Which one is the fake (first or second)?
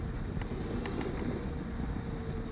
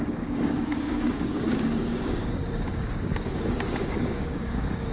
second